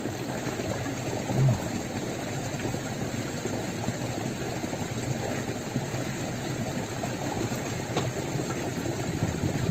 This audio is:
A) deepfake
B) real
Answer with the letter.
B